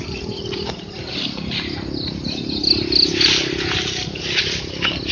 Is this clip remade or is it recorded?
recorded